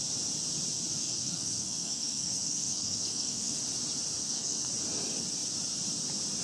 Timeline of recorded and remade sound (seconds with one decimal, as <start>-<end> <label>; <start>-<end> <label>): 0.0-1.0 recorded; 1.0-3.6 remade; 3.6-4.2 recorded; 4.2-4.7 remade; 4.7-6.4 recorded